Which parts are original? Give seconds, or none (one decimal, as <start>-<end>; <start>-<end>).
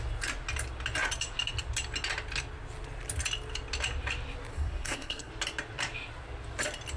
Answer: 0.0-4.5; 5.3-7.0